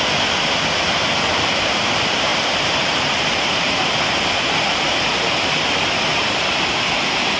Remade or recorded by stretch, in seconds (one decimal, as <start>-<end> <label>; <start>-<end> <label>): 0.0-2.3 recorded; 2.3-5.2 remade; 5.2-6.1 recorded; 6.1-7.4 remade